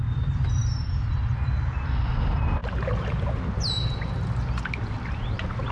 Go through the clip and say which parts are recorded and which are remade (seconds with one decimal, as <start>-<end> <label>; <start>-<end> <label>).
0.0-0.6 recorded; 0.6-1.1 remade; 1.1-5.7 recorded